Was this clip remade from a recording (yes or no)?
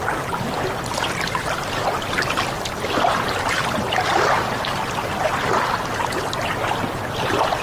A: no